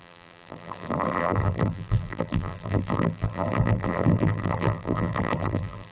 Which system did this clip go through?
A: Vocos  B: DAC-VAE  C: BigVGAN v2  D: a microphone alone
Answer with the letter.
C